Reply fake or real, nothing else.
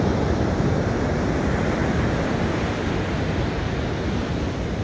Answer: real